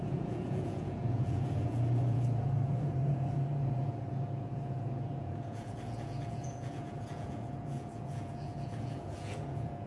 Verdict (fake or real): fake